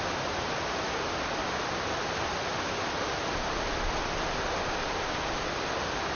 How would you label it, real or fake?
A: real